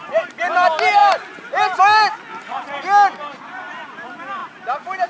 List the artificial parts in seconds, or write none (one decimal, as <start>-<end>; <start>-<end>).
none